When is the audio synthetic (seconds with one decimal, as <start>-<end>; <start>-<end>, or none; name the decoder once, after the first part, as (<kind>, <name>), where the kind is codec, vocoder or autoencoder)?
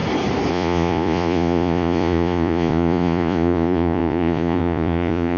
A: 0.5-5.4 (vocoder, Vocos)